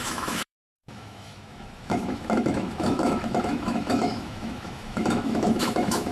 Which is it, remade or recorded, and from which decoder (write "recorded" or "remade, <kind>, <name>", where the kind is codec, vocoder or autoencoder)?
remade, autoencoder, DAC-VAE